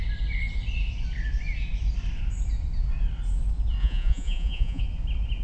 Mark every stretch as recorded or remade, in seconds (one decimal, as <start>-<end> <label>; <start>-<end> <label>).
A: 0.0-3.8 recorded; 3.8-4.8 remade; 4.8-5.4 recorded